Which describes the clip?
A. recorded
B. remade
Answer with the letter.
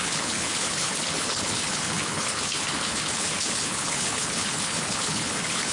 B